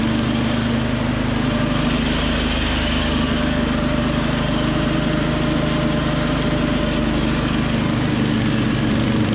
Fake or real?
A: real